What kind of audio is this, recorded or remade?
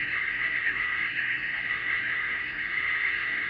remade